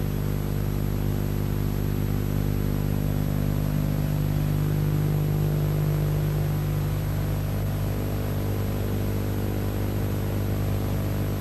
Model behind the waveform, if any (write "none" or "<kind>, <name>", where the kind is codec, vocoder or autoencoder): none